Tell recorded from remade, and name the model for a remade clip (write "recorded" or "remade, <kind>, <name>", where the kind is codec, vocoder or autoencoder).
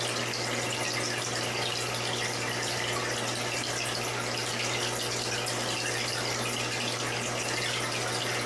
recorded